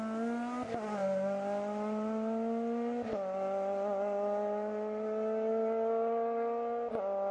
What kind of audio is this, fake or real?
real